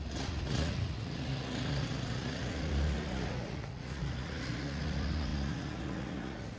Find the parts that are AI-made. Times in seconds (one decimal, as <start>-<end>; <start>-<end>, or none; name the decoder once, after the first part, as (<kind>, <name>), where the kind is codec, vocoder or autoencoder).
0.0-6.6 (vocoder, Vocos)